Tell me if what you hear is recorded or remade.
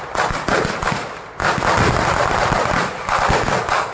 recorded